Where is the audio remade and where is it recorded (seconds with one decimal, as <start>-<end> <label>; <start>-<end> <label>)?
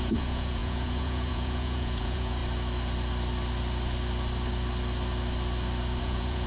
0.0-2.4 remade; 2.4-6.0 recorded; 6.0-6.5 remade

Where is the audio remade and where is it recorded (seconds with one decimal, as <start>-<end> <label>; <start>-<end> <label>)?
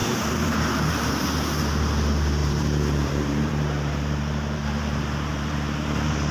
0.0-1.1 remade; 1.1-2.4 recorded; 2.4-6.3 remade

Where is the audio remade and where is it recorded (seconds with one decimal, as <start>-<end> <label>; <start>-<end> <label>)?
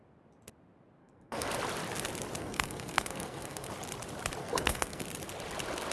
0.0-1.0 recorded; 1.0-1.5 remade; 1.5-2.4 recorded; 2.4-3.7 remade; 3.7-4.4 recorded; 4.4-5.0 remade; 5.0-5.9 recorded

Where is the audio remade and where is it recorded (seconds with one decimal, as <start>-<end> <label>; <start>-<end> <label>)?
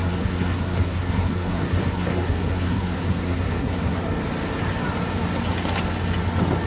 0.0-4.0 remade; 4.0-6.7 recorded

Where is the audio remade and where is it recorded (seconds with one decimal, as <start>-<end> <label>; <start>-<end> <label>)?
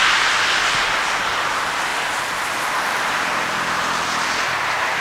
0.0-5.0 recorded